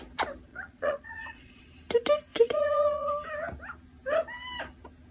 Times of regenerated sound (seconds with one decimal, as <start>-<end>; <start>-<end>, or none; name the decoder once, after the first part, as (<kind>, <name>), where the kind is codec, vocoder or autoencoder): 0.5-1.6 (vocoder, Vocos); 2.3-3.1